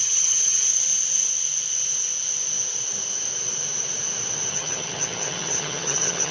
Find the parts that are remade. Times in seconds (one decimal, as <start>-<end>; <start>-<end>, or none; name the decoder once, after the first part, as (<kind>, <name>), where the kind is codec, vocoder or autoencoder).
0.0-0.7 (vocoder, HiFi-GAN); 4.5-6.3